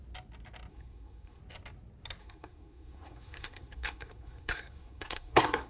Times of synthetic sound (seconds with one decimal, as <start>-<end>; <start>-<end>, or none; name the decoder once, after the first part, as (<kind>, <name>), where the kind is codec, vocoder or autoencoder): 0.7-1.4 (codec, SNAC); 2.2-5.7